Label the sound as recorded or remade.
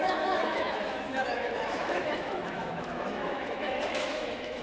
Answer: remade